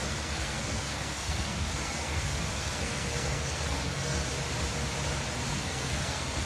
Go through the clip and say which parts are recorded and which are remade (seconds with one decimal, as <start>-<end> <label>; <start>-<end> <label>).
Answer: 0.0-4.2 remade; 4.2-5.5 recorded; 5.5-6.5 remade